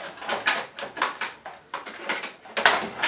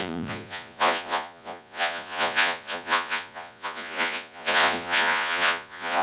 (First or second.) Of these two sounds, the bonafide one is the first